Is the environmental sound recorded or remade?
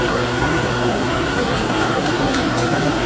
remade